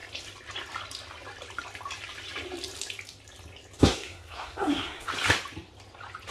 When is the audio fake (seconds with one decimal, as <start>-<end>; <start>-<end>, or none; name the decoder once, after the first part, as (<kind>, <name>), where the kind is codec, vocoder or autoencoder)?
3.8-5.1 (codec, SNAC)